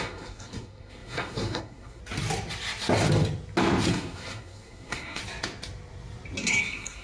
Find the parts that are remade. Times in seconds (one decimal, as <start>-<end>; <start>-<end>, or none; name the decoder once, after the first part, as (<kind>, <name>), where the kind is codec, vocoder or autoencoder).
0.0-2.0 (codec, SNAC); 3.9-5.2; 6.4-7.0